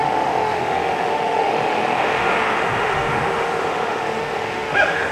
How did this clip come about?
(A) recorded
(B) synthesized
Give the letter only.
B